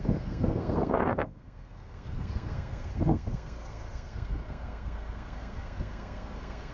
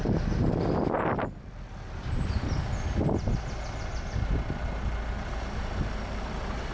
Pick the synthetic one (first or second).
first